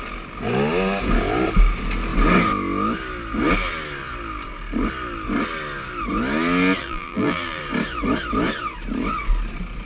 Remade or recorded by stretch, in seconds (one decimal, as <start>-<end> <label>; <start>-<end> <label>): 0.0-6.8 recorded; 6.8-7.6 remade; 7.6-9.9 recorded